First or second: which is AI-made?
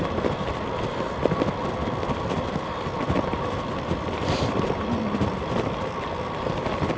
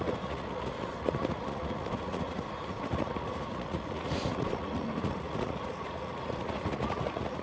second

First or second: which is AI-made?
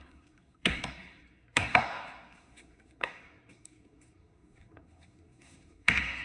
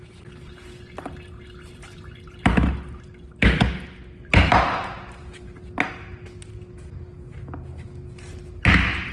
first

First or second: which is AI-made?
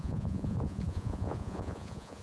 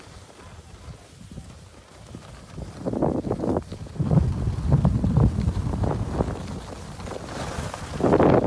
first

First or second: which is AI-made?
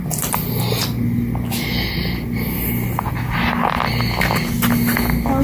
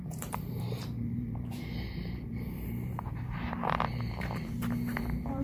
second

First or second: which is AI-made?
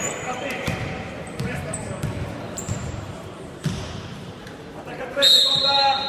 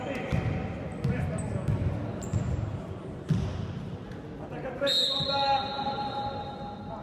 first